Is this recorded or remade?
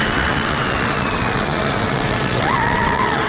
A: remade